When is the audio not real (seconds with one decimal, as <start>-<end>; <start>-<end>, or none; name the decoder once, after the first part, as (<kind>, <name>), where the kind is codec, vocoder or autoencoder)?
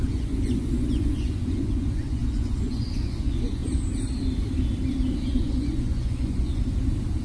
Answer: 0.0-3.6 (vocoder, Vocos); 5.2-6.5